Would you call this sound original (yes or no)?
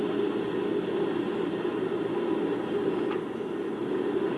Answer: yes